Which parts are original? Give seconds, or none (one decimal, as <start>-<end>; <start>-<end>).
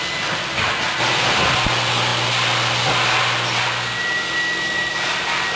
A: 0.0-5.6